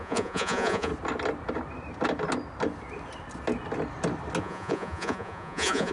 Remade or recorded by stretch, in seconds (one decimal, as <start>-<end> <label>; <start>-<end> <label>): 0.0-0.9 remade; 0.9-4.4 recorded; 4.4-5.9 remade